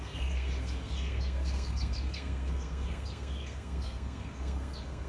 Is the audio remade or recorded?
remade